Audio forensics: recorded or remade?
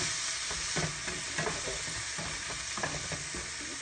recorded